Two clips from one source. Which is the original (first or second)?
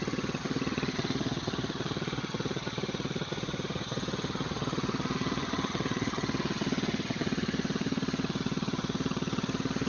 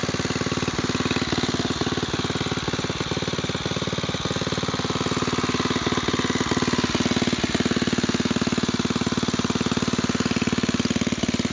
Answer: second